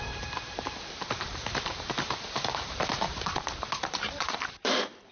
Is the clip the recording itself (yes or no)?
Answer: no